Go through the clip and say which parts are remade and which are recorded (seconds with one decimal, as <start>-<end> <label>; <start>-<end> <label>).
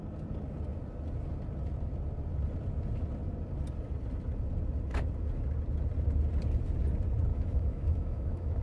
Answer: 0.0-7.3 recorded; 7.3-8.6 remade